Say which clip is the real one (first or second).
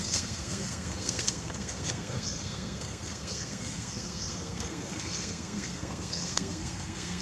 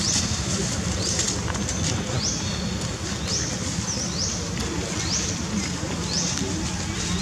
second